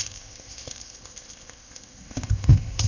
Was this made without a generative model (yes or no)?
no